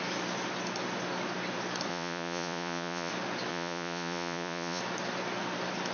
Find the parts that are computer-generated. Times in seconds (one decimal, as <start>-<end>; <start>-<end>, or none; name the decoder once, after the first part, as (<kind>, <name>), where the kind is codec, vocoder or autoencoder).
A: 1.9-3.1 (vocoder, Vocos); 3.5-4.8